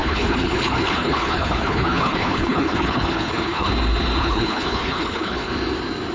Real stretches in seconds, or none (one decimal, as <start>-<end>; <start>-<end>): 3.7-4.2; 5.5-6.1